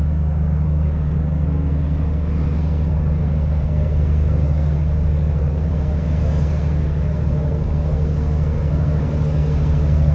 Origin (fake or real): fake